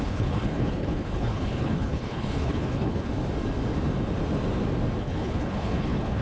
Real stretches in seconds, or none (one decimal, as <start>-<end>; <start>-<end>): 3.1-5.0